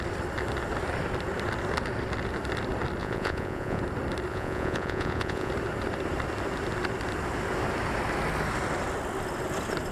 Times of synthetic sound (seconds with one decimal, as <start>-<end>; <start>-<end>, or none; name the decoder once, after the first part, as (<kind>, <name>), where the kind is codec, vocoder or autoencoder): 3.0-3.8 (vocoder, Vocos); 4.3-5.5